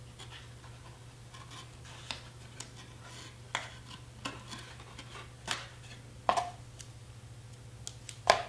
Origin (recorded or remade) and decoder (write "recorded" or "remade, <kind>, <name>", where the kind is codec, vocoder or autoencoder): recorded